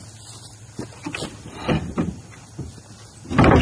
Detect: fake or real real